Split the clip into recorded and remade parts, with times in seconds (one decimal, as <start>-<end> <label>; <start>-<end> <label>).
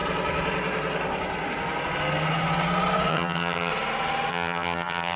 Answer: 0.0-3.1 recorded; 3.1-3.7 remade; 3.7-4.3 recorded; 4.3-5.2 remade